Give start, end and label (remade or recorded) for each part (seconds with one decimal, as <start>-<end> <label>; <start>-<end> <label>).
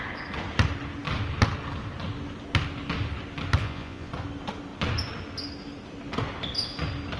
0.0-3.6 recorded; 3.6-4.1 remade; 4.1-7.2 recorded